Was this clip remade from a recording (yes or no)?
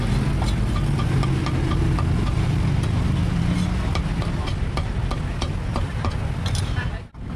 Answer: no